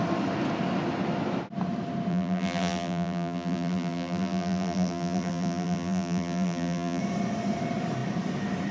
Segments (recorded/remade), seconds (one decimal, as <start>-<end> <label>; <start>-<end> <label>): 0.0-2.1 recorded; 2.1-7.0 remade; 7.0-8.7 recorded